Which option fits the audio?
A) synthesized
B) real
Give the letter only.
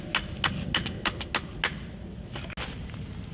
B